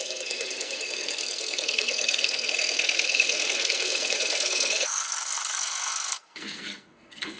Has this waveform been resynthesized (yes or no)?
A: yes